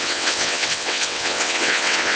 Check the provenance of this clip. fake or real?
fake